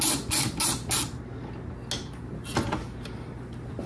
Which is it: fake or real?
real